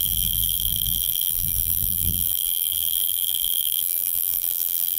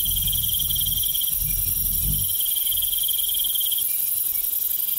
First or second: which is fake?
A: first